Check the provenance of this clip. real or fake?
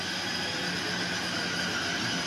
real